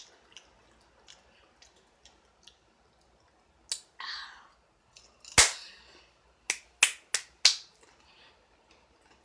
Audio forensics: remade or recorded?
recorded